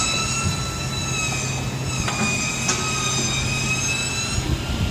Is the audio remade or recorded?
recorded